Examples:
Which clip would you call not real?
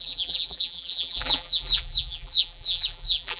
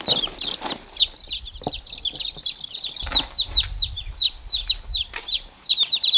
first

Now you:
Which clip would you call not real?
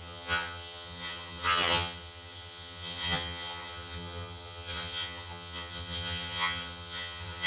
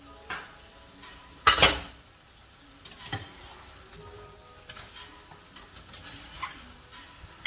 first